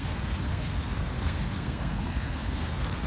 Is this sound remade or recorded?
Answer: remade